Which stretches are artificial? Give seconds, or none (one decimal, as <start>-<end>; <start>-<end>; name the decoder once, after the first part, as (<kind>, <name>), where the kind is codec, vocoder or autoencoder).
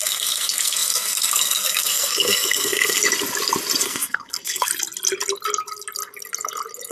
0.0-3.0 (codec, SNAC); 3.8-4.7